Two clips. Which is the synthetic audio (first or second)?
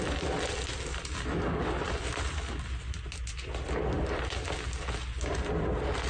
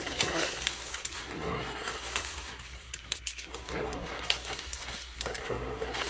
second